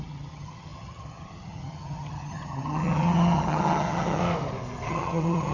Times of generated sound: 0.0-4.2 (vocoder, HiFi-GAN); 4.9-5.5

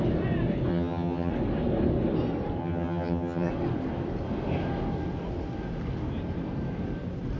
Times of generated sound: 0.7-1.3 (vocoder, HiFi-GAN); 2.6-3.5

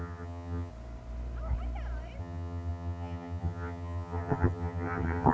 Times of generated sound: 0.0-0.7 (vocoder, HiFi-GAN); 2.2-5.3

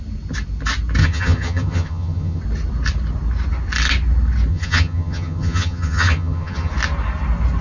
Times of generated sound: 1.0-2.4 (vocoder, HiFi-GAN); 4.5-6.7

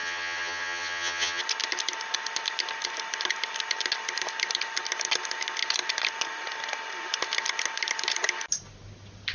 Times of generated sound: 0.0-1.4 (vocoder, HiFi-GAN)

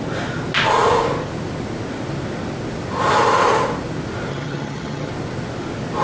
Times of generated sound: 4.3-5.1 (vocoder, HiFi-GAN)

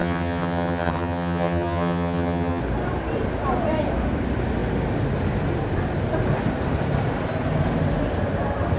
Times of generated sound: 0.0-2.6 (vocoder, HiFi-GAN)